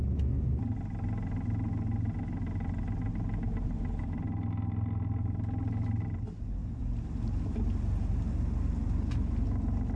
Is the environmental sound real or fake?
real